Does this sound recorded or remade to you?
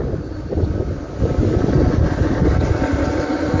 recorded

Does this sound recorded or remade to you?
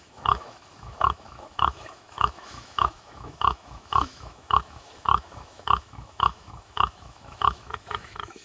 remade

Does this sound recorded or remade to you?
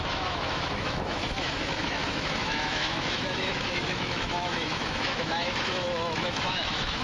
remade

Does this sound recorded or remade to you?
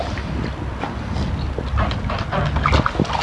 recorded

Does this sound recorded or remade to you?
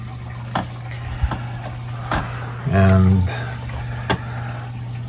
recorded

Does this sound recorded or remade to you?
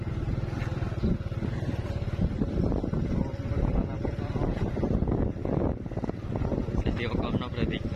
recorded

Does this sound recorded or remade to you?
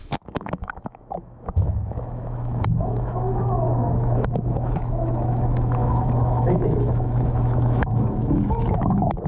remade